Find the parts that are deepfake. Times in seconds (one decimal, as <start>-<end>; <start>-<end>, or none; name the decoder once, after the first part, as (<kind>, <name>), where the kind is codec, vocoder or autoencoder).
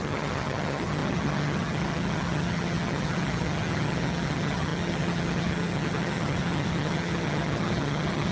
0.0-8.3 (vocoder, HiFi-GAN)